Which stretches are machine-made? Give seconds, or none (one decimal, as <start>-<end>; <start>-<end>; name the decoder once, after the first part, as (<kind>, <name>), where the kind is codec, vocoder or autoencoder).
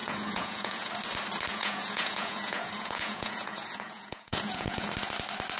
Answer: 0.0-0.9 (vocoder, Vocos); 1.5-4.9